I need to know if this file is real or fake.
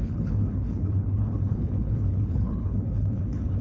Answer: fake